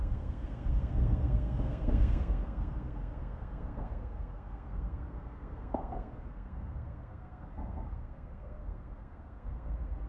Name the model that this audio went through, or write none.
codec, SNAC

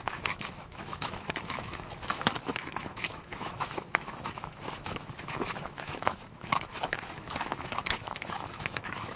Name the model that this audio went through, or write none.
autoencoder, DAC-VAE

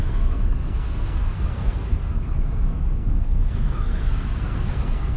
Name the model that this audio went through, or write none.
codec, SNAC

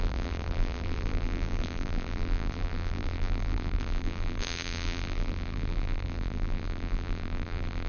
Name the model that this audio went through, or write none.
vocoder, BigVGAN v2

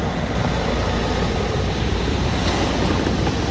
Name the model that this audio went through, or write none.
none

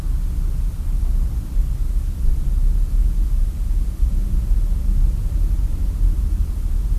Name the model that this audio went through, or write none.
none